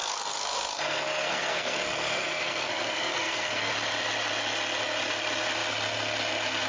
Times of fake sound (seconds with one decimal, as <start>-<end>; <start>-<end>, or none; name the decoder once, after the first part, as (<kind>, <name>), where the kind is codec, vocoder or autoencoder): 0.0-3.7 (codec, SNAC)